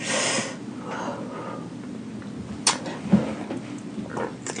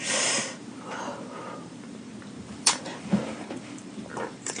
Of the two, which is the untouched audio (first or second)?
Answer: first